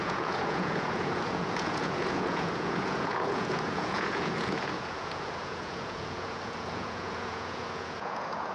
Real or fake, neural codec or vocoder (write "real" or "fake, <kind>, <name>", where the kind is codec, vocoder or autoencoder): fake, vocoder, Vocos